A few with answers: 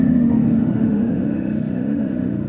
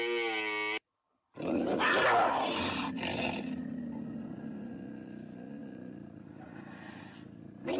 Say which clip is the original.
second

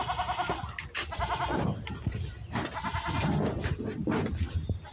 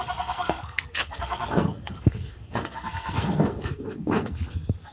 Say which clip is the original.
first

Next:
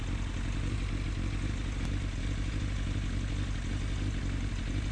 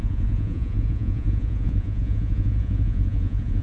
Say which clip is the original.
first